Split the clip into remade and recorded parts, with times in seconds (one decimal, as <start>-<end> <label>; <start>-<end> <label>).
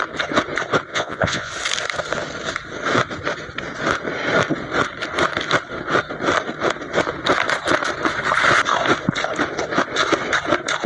0.0-0.9 recorded; 0.9-1.5 remade; 1.5-10.9 recorded